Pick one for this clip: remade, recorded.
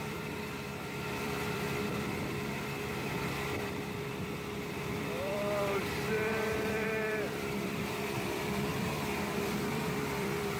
remade